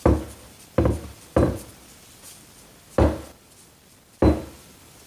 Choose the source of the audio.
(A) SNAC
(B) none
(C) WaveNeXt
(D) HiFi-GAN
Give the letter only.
B